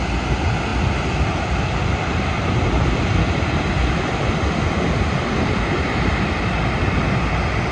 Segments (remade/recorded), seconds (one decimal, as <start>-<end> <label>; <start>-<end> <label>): 0.0-7.7 recorded